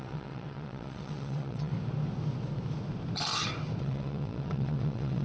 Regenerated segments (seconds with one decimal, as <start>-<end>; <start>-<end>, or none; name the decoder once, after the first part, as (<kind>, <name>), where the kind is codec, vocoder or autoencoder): 0.0-1.7 (vocoder, WaveNeXt); 3.8-5.2